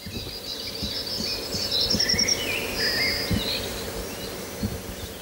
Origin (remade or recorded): recorded